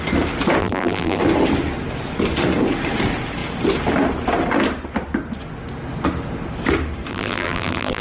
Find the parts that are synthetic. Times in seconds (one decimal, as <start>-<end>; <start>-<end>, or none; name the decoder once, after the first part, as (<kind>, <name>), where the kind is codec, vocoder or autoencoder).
0.6-1.2 (vocoder, BigVGAN v2); 7.1-8.0